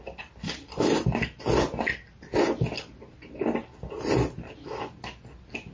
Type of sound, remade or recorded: recorded